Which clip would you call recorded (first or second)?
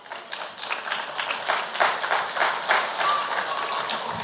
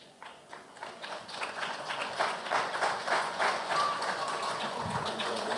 first